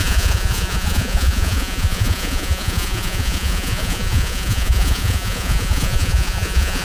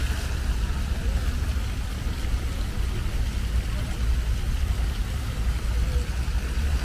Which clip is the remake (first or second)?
first